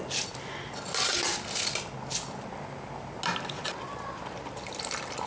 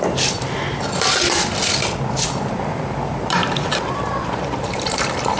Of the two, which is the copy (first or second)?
second